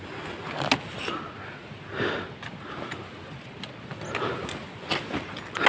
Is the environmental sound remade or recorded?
recorded